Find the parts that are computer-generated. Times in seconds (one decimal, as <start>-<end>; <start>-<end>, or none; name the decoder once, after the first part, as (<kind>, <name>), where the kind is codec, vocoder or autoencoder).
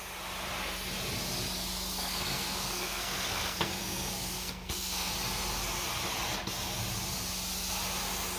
1.9-5.1 (codec, SNAC)